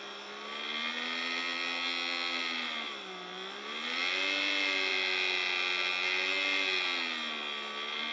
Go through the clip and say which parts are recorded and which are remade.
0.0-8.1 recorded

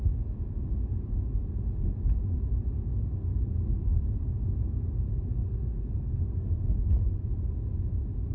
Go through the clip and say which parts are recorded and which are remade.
0.0-5.4 recorded; 5.4-6.6 remade; 6.6-8.3 recorded

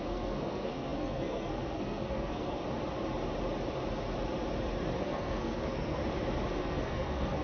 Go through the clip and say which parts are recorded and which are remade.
0.0-2.6 remade; 2.6-5.0 recorded; 5.0-6.0 remade; 6.0-6.6 recorded; 6.6-7.4 remade